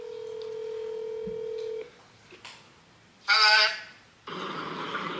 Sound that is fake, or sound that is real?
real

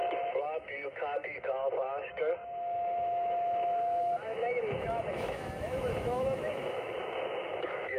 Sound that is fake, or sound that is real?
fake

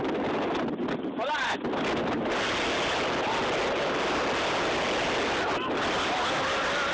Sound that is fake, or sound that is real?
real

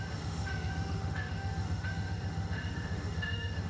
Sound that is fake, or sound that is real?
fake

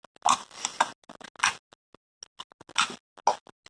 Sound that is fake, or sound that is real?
real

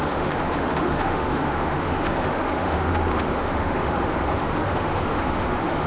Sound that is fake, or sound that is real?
fake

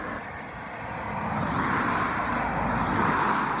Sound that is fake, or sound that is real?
real